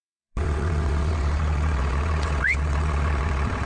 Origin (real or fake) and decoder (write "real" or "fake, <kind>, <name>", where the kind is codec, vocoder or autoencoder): fake, vocoder, WaveNeXt